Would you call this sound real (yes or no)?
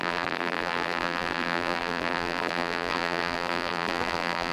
no